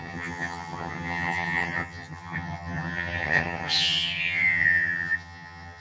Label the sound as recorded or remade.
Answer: remade